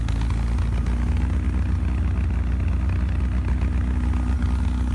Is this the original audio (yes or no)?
yes